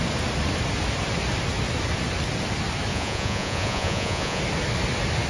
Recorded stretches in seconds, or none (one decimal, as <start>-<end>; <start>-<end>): 0.0-2.9; 4.4-5.3